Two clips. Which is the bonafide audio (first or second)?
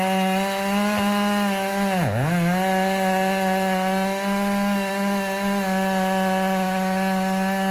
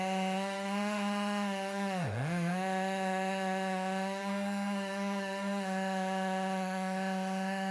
first